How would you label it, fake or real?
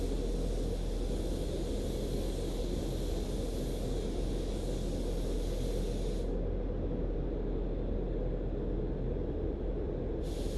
real